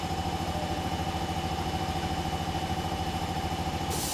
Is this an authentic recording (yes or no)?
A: yes